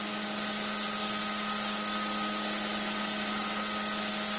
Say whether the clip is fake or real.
real